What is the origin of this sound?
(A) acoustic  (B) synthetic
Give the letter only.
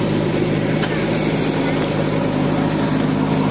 A